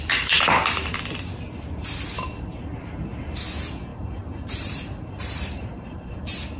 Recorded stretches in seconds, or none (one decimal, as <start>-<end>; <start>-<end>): 0.0-3.9